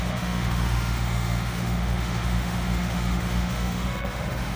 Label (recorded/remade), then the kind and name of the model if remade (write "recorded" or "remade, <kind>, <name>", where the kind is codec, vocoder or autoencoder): remade, autoencoder, DAC-VAE